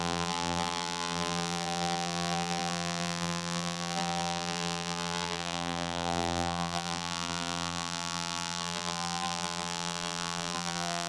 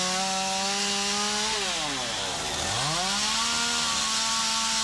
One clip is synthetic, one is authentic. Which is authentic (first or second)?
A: second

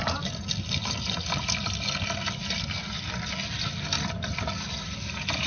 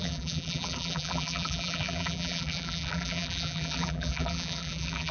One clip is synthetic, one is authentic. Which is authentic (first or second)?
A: first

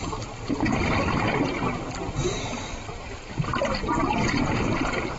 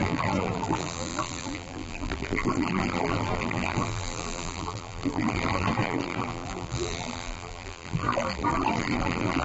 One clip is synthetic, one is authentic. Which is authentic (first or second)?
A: first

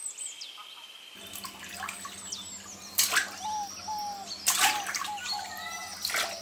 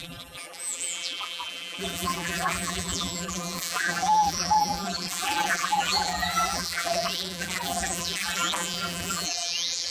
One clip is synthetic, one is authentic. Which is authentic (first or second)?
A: first